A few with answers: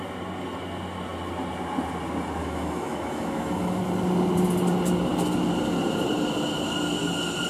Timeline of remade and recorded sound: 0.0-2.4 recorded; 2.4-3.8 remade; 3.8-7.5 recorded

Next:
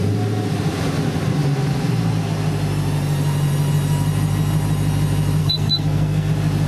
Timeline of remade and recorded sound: 0.0-5.4 recorded; 5.4-6.3 remade; 6.3-6.7 recorded

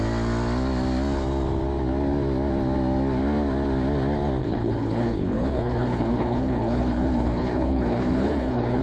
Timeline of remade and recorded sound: 0.0-4.4 recorded; 4.4-8.8 remade

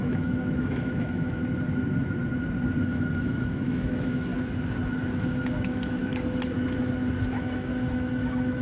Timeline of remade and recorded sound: 0.0-1.4 remade; 1.4-2.8 recorded; 2.8-4.3 remade; 4.3-5.1 recorded; 5.1-6.0 remade; 6.0-7.3 recorded; 7.3-8.6 remade

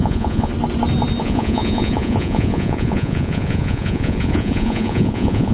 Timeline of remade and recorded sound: 0.0-0.5 remade; 0.5-1.2 recorded; 1.2-5.5 remade

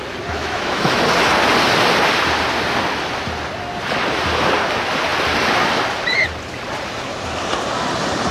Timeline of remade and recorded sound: 0.0-0.4 recorded; 0.4-1.0 remade; 1.0-8.3 recorded

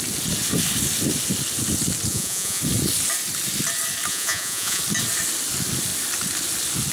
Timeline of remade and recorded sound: 0.0-2.1 recorded; 2.1-2.6 remade; 2.6-4.1 recorded; 4.1-4.8 remade; 4.8-6.9 recorded